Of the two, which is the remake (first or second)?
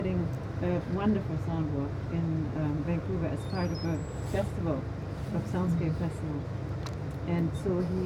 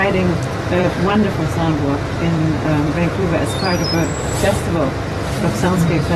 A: second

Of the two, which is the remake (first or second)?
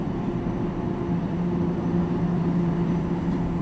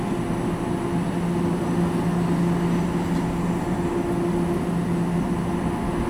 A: first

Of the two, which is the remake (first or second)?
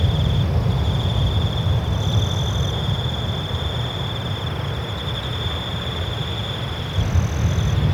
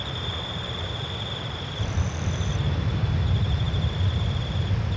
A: second